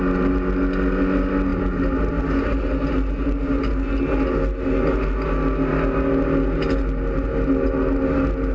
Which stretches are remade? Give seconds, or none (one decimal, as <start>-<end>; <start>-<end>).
none